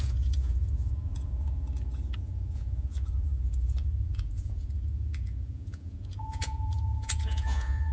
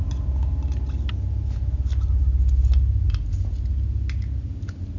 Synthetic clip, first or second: first